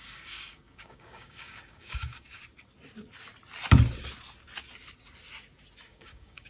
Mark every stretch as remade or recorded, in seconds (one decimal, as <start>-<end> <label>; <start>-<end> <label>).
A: 0.0-2.4 remade; 2.4-5.9 recorded; 5.9-6.5 remade